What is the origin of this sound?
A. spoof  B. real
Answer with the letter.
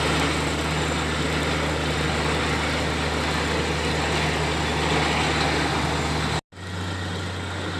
B